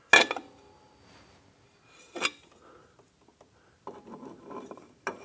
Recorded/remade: recorded